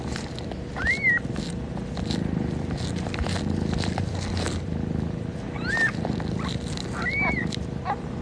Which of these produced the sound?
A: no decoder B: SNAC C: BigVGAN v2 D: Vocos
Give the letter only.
A